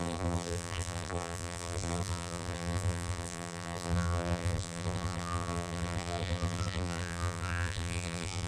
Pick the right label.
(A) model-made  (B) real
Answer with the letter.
A